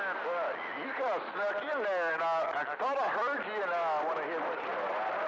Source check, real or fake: real